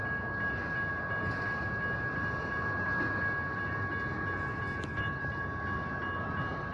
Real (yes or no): yes